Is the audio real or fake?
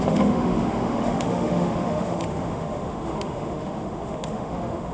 fake